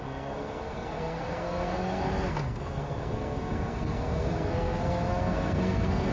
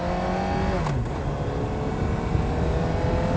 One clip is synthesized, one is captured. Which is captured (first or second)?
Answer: second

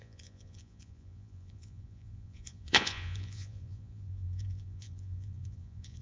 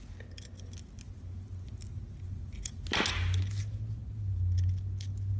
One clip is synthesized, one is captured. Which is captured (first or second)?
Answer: second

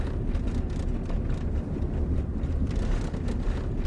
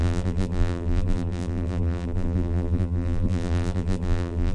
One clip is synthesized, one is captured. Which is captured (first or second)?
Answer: first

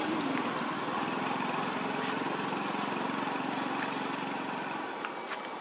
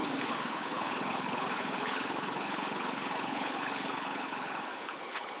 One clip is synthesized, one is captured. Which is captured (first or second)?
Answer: first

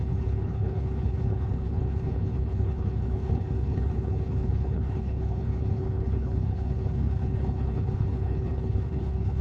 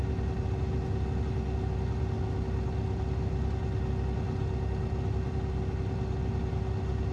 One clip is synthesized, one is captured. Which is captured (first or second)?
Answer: second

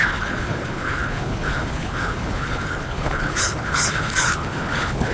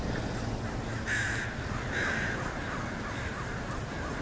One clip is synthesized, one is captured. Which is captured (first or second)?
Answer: second